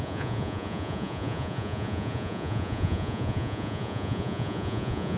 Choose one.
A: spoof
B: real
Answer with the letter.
A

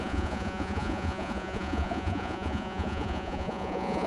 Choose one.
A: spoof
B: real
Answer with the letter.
A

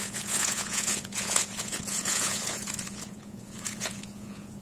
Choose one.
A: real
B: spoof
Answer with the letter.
B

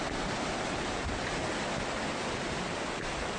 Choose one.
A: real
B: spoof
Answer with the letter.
A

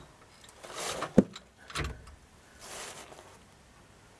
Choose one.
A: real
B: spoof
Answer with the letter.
A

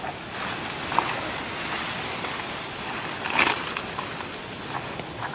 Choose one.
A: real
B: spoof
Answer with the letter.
A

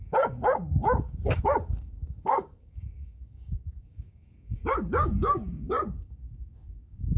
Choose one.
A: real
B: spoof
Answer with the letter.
B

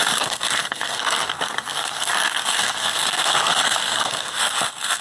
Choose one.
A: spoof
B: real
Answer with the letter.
A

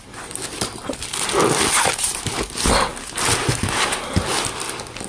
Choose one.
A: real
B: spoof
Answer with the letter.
A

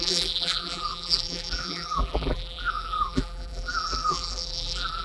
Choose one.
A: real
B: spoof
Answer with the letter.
B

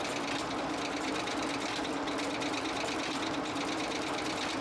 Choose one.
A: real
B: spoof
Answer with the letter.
A